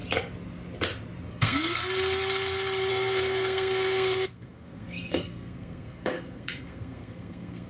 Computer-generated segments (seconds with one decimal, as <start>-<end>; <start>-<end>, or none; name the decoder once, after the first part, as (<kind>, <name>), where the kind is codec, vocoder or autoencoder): 1.3-1.8 (codec, SNAC); 2.9-7.7